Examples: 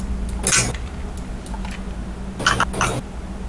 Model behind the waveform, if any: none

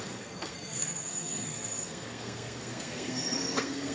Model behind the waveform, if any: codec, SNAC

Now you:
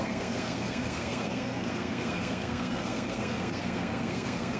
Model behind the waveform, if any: codec, SNAC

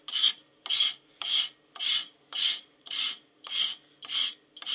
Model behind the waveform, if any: none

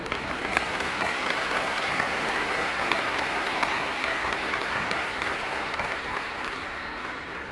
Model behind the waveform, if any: codec, SNAC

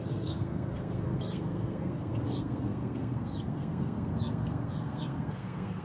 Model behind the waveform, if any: codec, SNAC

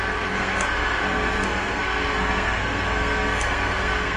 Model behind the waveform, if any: codec, SNAC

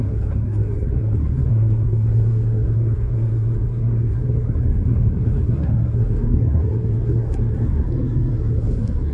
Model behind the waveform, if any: codec, SNAC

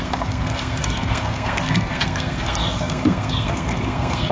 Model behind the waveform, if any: codec, SNAC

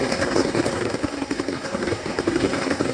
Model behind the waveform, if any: codec, SNAC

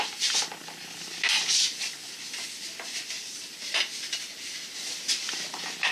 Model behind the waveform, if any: none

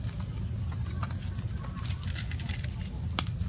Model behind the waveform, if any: none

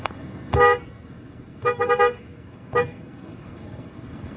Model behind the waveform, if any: codec, SNAC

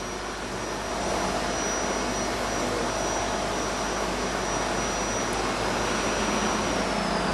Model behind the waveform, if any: none